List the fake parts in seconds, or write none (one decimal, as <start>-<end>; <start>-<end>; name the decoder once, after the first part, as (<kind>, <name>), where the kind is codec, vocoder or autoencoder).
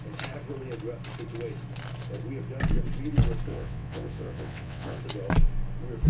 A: 3.5-5.0 (vocoder, WaveNeXt)